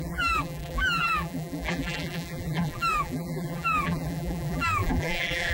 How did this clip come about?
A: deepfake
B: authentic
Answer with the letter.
A